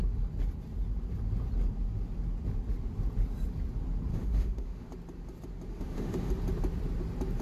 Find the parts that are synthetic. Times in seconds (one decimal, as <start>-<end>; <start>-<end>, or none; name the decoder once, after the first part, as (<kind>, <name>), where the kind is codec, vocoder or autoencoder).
4.1-4.9 (autoencoder, DAC-VAE); 5.7-6.3